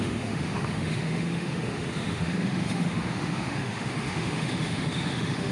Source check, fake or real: fake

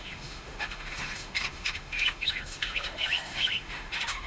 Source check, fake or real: fake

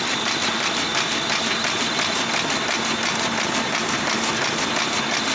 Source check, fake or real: real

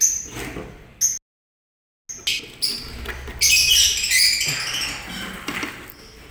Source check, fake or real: real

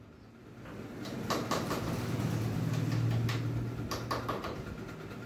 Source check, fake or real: real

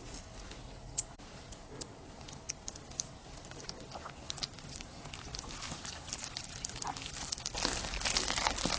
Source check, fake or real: real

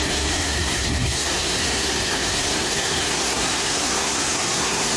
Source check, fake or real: fake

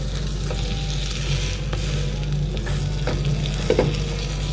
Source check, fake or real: real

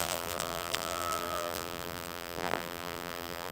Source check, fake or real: fake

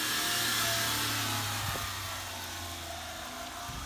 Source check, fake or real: real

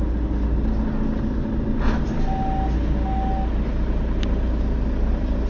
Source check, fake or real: real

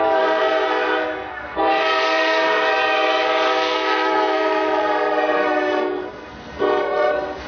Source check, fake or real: fake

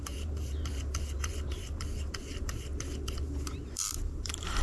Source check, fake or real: fake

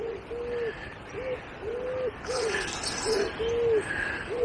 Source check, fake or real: real